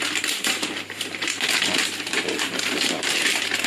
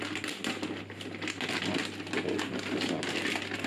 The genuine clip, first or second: second